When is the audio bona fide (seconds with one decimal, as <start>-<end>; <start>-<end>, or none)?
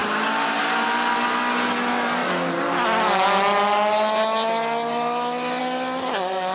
0.0-6.5